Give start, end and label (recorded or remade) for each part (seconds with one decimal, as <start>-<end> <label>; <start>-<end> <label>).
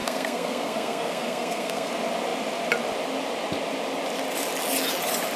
0.0-1.9 remade; 1.9-5.4 recorded